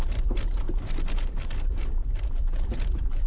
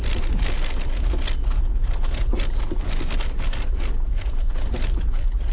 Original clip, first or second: second